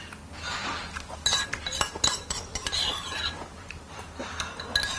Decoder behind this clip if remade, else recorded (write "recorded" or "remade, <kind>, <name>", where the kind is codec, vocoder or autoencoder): recorded